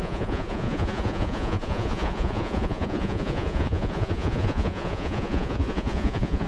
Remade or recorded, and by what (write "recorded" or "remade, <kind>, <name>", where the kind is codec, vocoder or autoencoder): remade, vocoder, Vocos